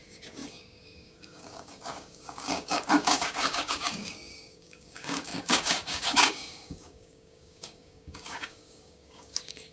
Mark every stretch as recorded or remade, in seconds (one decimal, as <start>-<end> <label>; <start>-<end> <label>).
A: 0.0-9.7 remade